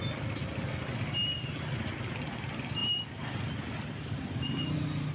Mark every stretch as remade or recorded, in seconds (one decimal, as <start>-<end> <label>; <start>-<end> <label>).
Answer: 0.0-5.1 recorded